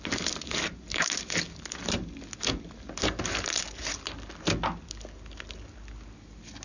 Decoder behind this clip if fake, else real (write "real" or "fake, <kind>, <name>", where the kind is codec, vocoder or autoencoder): real